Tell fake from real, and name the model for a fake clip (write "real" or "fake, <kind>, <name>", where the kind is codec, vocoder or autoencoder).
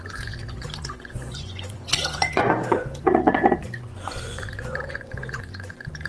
fake, vocoder, Vocos